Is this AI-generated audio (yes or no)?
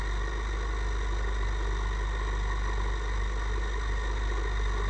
no